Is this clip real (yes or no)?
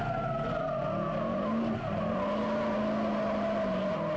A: yes